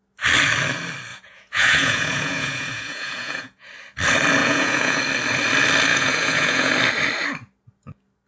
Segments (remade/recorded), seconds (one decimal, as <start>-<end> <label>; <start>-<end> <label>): 0.0-1.1 recorded; 1.1-3.7 remade; 3.7-4.4 recorded; 4.4-5.0 remade; 5.0-5.9 recorded; 5.9-6.7 remade; 6.7-8.3 recorded